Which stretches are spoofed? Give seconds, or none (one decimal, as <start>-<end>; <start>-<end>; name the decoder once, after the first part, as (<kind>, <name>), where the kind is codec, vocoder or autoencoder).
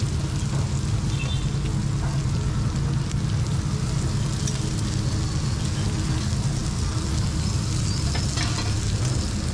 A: none